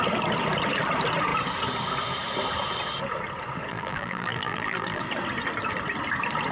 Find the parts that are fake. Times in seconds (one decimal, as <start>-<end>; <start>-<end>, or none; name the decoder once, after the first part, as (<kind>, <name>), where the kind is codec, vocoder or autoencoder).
3.7-5.0 (vocoder, BigVGAN v2)